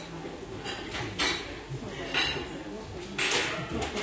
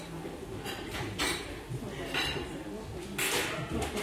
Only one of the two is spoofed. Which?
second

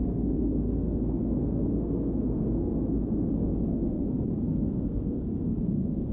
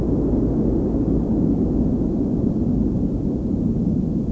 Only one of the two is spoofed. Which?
first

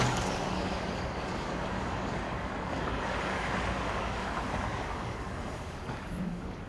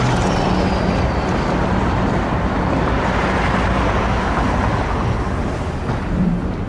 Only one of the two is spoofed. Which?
first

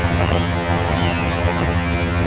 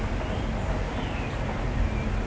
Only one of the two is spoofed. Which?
first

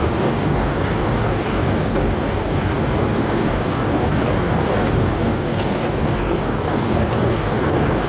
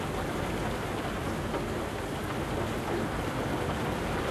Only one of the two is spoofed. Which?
first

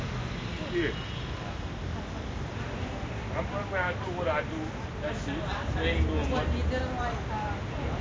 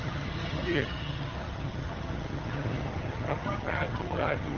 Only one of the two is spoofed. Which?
second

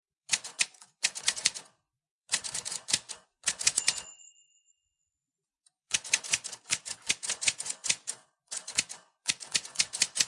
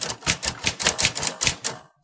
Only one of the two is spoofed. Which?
first